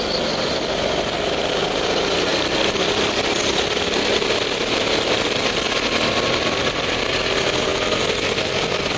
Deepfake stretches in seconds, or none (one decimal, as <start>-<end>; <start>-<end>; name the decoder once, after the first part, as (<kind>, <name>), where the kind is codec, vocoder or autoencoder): 0.0-9.0 (vocoder, BigVGAN v2)